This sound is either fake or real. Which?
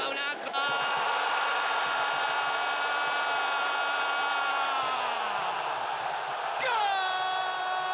real